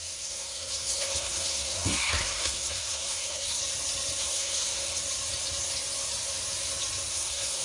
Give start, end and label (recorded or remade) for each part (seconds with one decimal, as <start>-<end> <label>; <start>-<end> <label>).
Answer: 0.0-3.6 remade; 3.6-4.2 recorded; 4.2-5.0 remade; 5.0-7.1 recorded; 7.1-7.6 remade